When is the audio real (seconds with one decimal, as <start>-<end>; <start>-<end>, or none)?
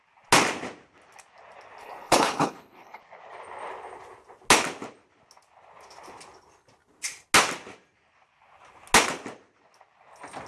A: 0.0-1.8; 3.0-10.5